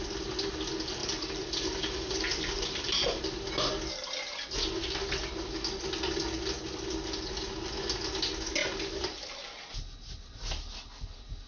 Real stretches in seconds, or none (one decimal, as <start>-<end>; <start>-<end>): 0.0-1.0; 3.2-8.6; 9.7-11.5